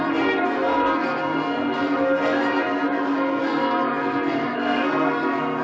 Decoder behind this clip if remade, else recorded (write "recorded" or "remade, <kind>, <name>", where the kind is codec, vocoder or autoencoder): remade, codec, SNAC